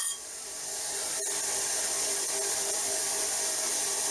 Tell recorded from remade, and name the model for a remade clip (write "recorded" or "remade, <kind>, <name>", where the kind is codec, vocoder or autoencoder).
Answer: recorded